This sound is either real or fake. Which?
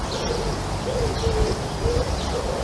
real